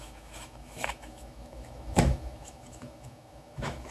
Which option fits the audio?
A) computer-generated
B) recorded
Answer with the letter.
A